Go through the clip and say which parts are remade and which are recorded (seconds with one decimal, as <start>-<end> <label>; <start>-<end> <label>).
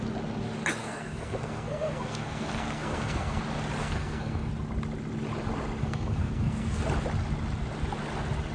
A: 0.0-0.8 recorded; 0.8-3.4 remade; 3.4-3.8 recorded; 3.8-4.5 remade; 4.5-5.8 recorded; 5.8-6.8 remade; 6.8-8.5 recorded